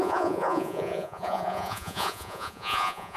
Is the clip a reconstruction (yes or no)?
yes